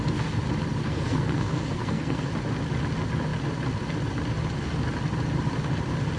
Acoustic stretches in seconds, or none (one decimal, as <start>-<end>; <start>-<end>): 0.0-0.8; 2.3-6.2